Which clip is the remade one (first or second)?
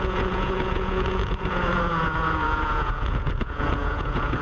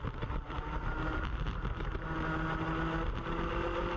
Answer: first